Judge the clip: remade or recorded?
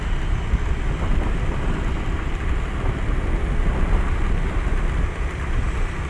recorded